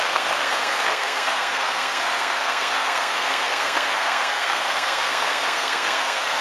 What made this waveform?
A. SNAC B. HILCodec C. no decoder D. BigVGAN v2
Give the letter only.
A